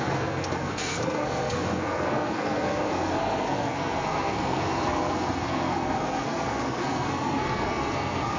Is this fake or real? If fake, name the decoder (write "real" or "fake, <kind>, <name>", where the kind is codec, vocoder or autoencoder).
fake, codec, SNAC